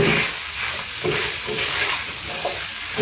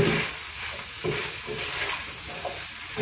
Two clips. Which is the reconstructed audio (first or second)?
first